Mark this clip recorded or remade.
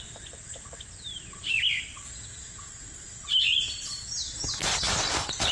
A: recorded